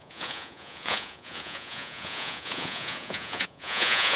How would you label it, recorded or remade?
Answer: remade